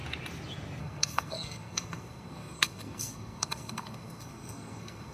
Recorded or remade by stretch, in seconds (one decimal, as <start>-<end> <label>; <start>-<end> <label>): 0.0-0.8 recorded; 0.8-5.1 remade